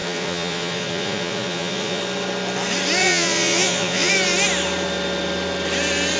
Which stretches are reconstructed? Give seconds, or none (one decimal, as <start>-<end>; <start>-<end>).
0.0-2.0; 3.0-4.1